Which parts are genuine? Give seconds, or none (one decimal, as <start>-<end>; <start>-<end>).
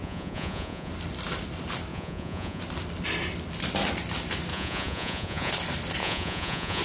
0.9-1.9; 2.6-4.5; 5.5-6.0